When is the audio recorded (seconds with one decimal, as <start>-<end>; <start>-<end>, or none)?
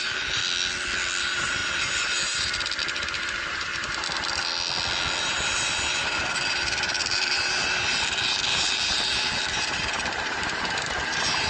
0.4-1.2; 3.7-5.2